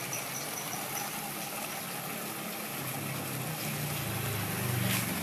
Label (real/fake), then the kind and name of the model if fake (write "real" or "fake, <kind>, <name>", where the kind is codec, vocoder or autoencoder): real